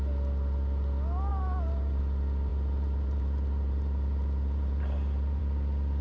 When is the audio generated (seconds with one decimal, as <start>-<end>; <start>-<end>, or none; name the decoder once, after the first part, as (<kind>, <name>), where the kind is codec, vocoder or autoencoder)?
1.3-2.0 (vocoder, BigVGAN v2); 2.5-5.4